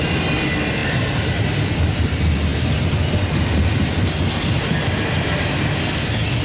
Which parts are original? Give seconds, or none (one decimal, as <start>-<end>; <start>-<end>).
0.0-0.8; 1.5-6.4